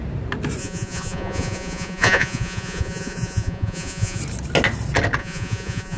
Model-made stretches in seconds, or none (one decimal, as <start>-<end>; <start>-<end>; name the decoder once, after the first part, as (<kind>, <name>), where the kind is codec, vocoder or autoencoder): 0.6-4.2 (vocoder, Vocos); 5.2-6.0